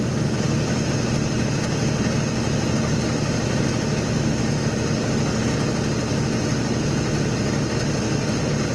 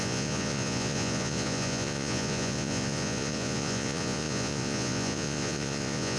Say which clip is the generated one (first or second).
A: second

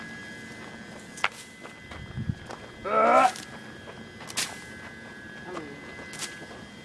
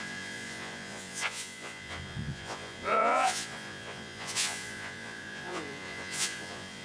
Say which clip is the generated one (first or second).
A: second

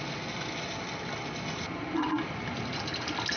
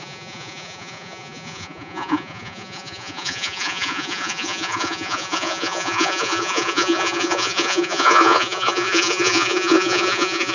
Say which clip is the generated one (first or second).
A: second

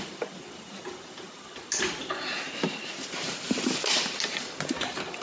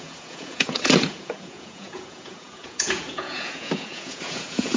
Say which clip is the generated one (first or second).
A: second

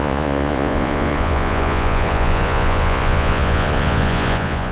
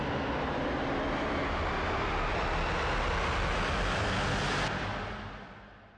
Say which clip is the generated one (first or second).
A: first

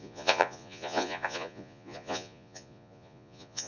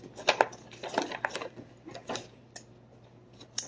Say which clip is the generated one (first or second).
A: first